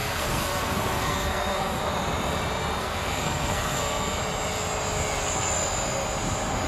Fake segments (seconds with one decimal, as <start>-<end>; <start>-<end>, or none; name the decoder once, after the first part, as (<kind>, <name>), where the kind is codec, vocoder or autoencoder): 0.0-1.8 (codec, SNAC); 2.8-4.2